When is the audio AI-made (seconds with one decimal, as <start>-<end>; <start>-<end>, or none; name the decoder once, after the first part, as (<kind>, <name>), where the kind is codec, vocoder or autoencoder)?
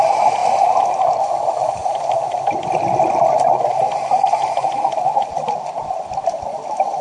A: none